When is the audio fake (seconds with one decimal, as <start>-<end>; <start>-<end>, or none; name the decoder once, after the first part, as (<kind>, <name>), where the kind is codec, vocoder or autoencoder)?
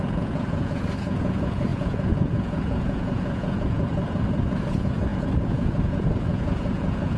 0.0-7.2 (vocoder, Vocos)